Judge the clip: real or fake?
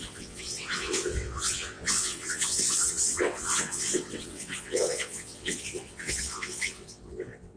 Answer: fake